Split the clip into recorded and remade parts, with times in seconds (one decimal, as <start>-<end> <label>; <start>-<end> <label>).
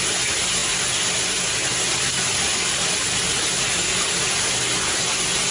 0.0-5.5 recorded